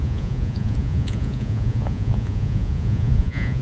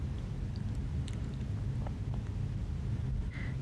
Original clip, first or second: second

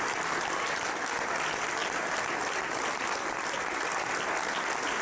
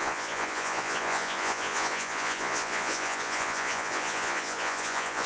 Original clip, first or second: first